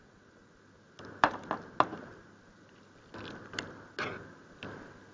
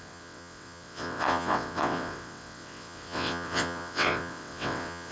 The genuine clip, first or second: first